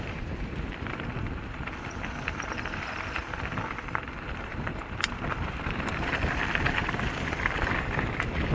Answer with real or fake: fake